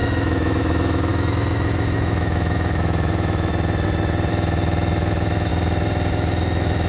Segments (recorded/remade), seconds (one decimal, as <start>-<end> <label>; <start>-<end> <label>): 0.0-3.5 remade; 3.5-4.3 recorded; 4.3-5.5 remade; 5.5-6.1 recorded; 6.1-6.9 remade